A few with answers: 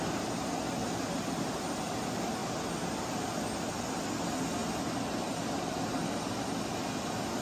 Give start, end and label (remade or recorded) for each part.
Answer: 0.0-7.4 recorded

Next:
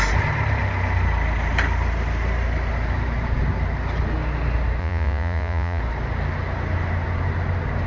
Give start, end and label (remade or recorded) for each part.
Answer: 0.0-4.8 recorded; 4.8-5.8 remade; 5.8-7.9 recorded

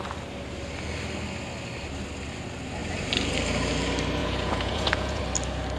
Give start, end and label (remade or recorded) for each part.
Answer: 0.0-4.2 recorded; 4.2-5.2 remade; 5.2-5.8 recorded

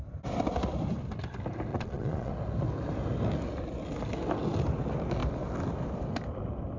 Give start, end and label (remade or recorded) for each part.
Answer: 0.0-1.7 recorded; 1.7-2.3 remade; 2.3-6.8 recorded